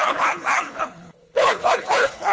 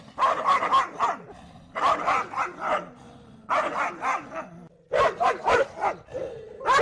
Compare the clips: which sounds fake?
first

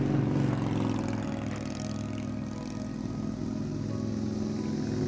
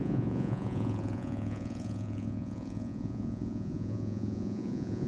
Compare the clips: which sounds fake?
second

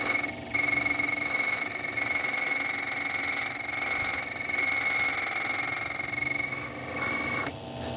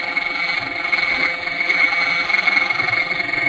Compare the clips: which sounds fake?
second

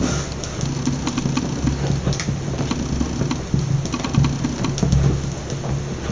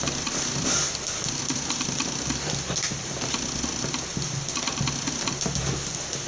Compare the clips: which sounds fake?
second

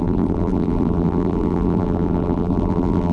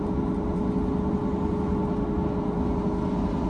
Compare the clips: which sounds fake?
first